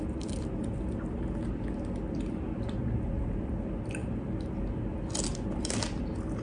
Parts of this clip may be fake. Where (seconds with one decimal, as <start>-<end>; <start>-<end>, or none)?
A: none